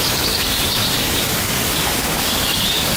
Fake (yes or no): yes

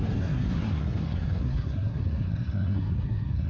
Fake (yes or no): yes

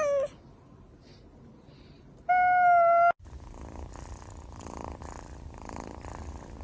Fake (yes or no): no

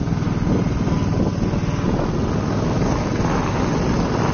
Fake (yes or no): no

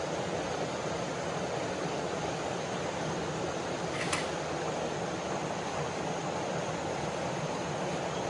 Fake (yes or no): no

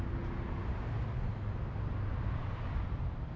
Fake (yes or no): no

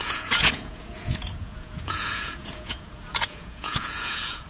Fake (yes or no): yes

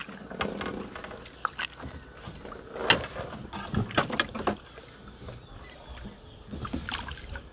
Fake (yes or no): no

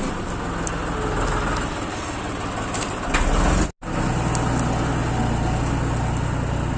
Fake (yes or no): no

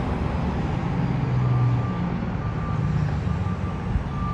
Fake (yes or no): no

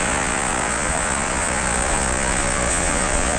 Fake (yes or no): yes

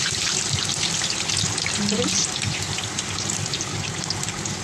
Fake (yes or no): no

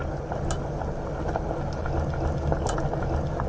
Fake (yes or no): no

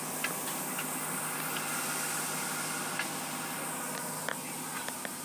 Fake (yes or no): no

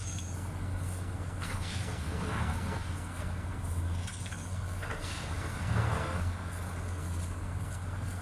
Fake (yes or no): yes